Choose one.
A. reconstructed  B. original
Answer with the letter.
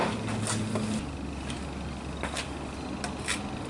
B